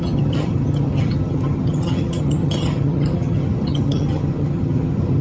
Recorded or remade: remade